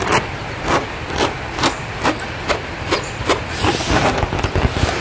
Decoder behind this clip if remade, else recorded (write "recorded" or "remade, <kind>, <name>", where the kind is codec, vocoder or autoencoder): recorded